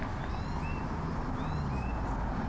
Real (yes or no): yes